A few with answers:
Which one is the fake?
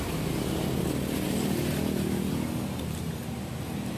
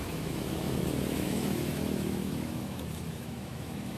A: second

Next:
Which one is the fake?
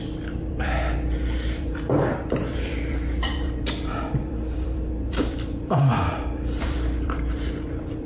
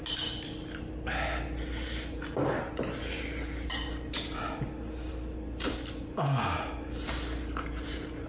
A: first